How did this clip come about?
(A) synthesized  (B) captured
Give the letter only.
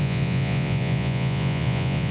A